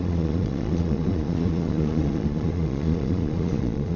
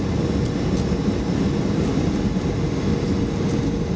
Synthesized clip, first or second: first